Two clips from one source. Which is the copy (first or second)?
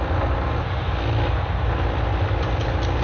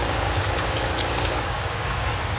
second